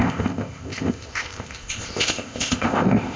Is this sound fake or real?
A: fake